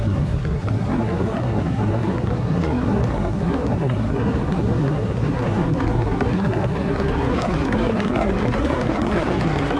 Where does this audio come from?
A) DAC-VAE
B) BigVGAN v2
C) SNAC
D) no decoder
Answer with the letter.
C